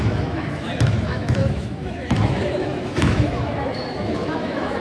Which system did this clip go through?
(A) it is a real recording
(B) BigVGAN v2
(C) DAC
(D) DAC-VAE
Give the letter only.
D